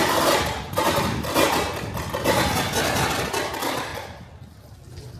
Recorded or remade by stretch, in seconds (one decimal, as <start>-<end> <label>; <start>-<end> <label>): 0.0-3.1 recorded; 3.1-3.9 remade; 3.9-4.6 recorded; 4.6-5.2 remade